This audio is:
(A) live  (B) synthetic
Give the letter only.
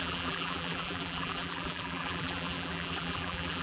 B